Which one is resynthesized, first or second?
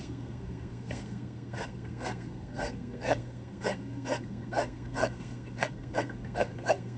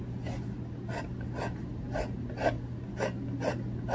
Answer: first